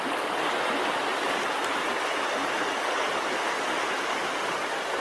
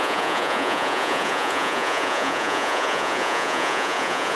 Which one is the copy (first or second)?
second